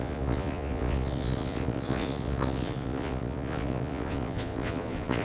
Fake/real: fake